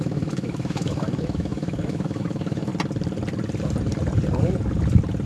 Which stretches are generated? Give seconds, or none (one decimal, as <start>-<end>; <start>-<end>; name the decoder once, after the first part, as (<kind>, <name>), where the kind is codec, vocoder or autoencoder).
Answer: 0.0-2.7 (autoencoder, DAC-VAE)